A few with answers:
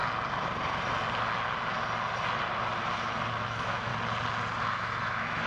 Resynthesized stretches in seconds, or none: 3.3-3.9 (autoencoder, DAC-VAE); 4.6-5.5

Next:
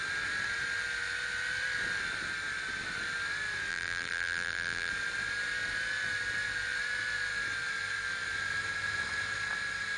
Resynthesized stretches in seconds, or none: 3.7-4.9 (vocoder, BigVGAN v2)

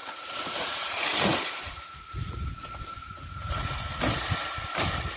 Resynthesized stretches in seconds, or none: 0.0-2.5 (vocoder, Vocos); 3.0-4.0